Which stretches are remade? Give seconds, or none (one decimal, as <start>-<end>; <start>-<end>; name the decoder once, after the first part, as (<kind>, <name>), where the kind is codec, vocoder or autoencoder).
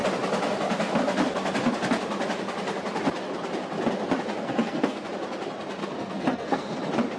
4.4-5.1 (codec, SNAC); 5.8-6.8